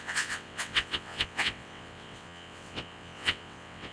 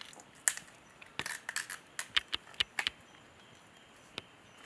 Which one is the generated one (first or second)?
first